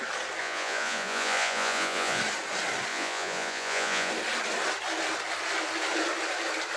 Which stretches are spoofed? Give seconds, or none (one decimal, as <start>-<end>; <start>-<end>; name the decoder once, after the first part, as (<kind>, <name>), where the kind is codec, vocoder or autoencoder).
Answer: 0.4-2.2 (vocoder, Vocos); 2.9-4.1